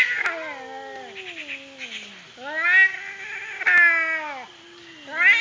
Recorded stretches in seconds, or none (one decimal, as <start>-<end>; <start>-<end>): 0.0-5.4